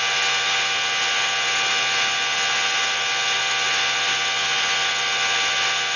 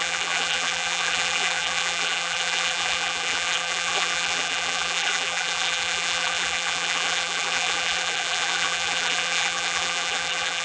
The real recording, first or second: first